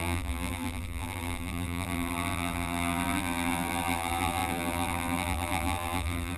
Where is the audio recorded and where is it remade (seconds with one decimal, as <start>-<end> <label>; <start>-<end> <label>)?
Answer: 0.0-6.4 remade